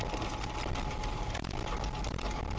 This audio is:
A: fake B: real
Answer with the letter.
B